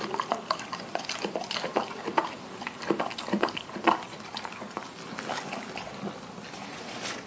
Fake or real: real